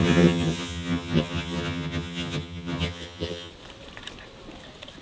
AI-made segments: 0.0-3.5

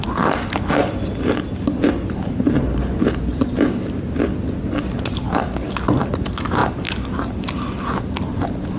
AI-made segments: none

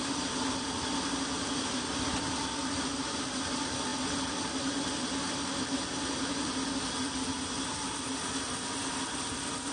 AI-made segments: none

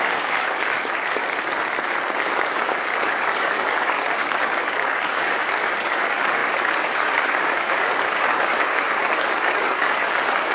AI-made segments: 0.0-1.2; 2.2-10.5

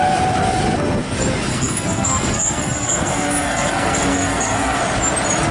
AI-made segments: 1.5-4.8

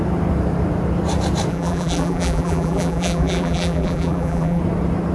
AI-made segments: 1.5-4.6

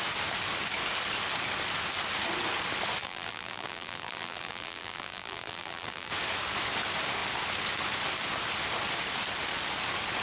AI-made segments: 3.0-6.1

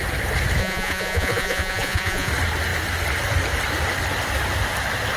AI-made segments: 0.6-2.3